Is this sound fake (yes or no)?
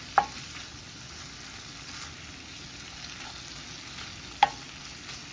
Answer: no